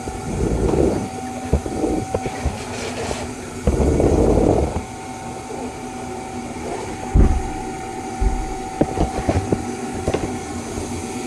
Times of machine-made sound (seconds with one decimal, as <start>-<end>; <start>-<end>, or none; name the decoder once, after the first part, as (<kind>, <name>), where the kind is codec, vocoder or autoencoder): 1.6-3.7 (vocoder, BigVGAN v2); 4.6-8.1